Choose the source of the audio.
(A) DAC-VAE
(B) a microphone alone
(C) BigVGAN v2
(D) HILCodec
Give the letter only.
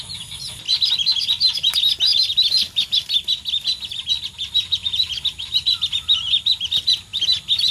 B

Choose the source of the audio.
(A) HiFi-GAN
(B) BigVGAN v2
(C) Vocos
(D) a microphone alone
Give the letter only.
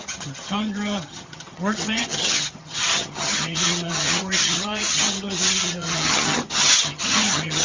A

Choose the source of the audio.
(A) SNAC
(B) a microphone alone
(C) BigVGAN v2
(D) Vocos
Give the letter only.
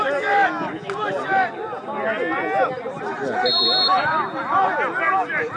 B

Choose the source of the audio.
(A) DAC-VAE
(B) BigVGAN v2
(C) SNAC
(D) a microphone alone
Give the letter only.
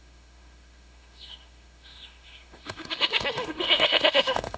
A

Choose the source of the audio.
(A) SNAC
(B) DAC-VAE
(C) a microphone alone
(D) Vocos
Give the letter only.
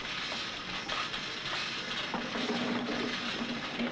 C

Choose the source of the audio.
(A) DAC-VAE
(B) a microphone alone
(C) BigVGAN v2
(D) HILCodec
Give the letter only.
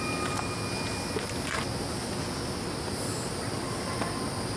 B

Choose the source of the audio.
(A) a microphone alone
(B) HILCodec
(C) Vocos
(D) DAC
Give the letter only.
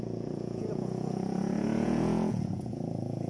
C